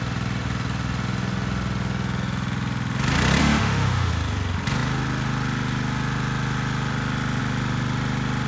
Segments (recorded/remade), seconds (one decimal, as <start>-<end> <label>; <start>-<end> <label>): 0.0-3.4 recorded; 3.4-4.1 remade; 4.1-8.5 recorded